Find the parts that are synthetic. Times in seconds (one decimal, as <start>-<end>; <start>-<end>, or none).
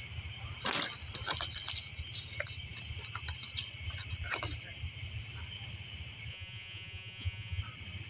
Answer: 6.3-7.6